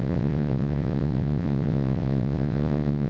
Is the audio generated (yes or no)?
yes